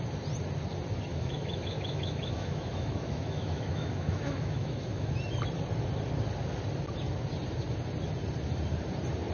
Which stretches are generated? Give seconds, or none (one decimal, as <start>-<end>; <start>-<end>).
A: 1.1-5.1